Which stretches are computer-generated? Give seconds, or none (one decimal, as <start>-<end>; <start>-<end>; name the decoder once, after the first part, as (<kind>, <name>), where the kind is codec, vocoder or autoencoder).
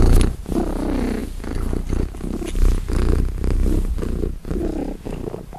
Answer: none